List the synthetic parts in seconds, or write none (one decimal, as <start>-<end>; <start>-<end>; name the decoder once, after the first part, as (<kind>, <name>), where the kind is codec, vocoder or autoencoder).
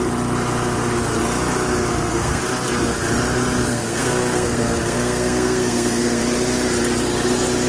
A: 1.9-2.4 (codec, SNAC); 3.7-6.2